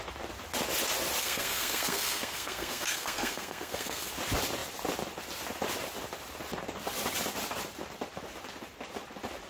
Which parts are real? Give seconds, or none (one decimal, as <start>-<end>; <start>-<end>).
0.0-1.2; 4.1-9.5